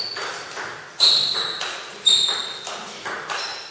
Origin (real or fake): real